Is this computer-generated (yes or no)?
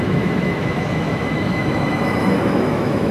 yes